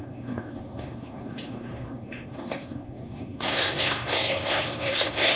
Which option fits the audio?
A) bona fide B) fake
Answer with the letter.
B